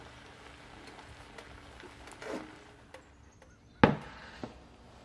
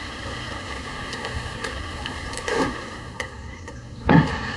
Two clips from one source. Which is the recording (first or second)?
first